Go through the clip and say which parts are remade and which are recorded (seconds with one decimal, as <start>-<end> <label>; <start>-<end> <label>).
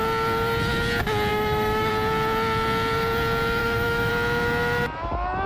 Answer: 0.0-1.3 recorded; 1.3-1.9 remade; 1.9-3.6 recorded; 3.6-4.1 remade; 4.1-5.5 recorded